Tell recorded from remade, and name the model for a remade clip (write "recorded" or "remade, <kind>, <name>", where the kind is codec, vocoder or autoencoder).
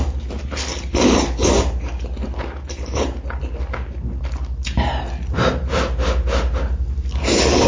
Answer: recorded